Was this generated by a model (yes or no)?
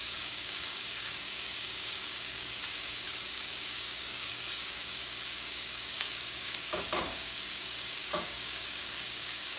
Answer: yes